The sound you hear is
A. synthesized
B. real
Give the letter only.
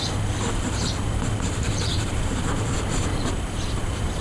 A